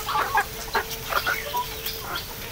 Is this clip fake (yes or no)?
no